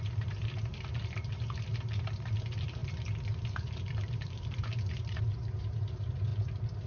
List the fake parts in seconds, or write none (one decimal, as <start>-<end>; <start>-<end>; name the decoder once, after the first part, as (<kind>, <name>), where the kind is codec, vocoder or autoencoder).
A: 0.0-6.9 (vocoder, BigVGAN v2)